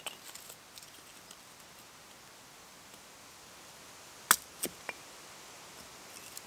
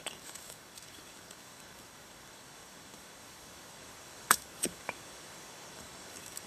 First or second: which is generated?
second